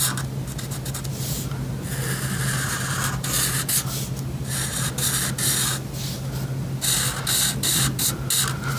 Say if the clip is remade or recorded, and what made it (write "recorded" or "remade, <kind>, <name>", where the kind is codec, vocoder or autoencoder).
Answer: recorded